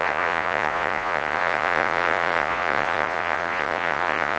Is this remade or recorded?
remade